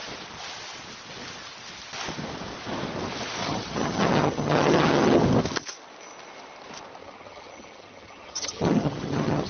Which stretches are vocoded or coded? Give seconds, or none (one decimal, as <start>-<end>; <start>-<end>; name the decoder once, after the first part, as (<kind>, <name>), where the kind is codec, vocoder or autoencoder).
3.4-5.2 (vocoder, HiFi-GAN); 7.0-9.5

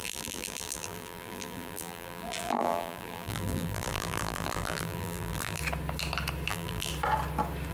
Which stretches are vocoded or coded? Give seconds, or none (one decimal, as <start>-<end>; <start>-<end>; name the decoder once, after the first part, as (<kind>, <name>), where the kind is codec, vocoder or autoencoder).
0.0-5.6 (vocoder, BigVGAN v2); 6.5-6.9

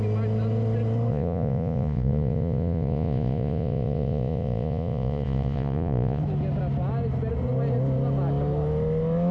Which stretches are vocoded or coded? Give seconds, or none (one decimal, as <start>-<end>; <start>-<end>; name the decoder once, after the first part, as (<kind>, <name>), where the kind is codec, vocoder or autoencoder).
1.1-6.2 (vocoder, Vocos)

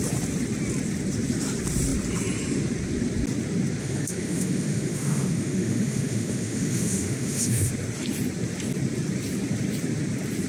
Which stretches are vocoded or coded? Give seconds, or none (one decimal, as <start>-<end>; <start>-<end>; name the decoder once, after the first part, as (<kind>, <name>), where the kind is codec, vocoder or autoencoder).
3.8-7.7 (autoencoder, DAC-VAE)